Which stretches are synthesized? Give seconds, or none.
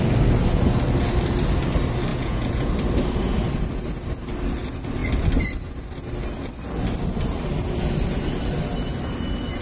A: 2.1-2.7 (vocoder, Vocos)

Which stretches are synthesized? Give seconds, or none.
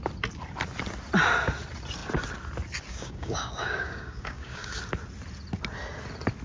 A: 2.9-4.8 (codec, DAC)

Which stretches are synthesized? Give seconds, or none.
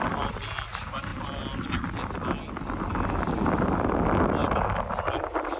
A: none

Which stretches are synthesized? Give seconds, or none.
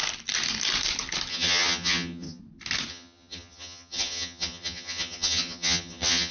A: 1.3-2.4 (vocoder, HiFi-GAN); 2.9-6.3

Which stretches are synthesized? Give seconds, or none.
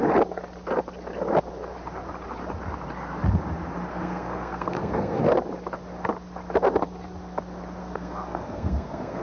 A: 3.9-5.2 (codec, SNAC); 7.8-9.2